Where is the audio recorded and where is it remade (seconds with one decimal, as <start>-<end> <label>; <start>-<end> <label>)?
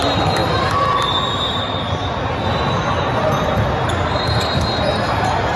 0.0-0.4 remade; 0.4-1.3 recorded; 1.3-2.0 remade; 2.0-5.6 recorded